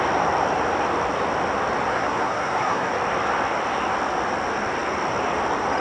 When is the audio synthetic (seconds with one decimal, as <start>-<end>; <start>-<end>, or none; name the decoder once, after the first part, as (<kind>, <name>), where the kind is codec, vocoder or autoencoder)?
1.9-2.9 (codec, SNAC)